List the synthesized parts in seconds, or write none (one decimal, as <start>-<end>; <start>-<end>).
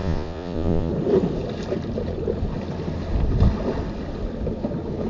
0.0-0.9